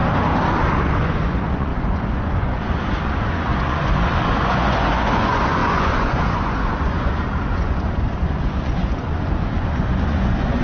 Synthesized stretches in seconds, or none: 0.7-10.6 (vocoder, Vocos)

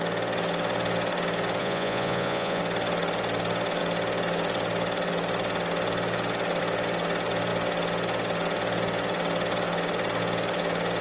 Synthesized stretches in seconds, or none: 1.6-2.6 (vocoder, Vocos)

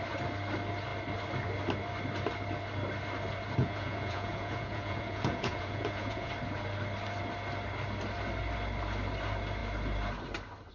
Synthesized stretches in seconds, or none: 3.6-6.3 (vocoder, Vocos)